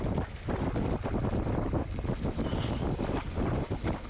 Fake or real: real